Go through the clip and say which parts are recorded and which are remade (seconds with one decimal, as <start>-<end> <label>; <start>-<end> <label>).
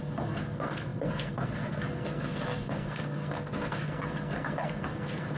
0.0-5.4 remade